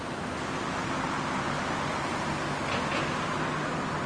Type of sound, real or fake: real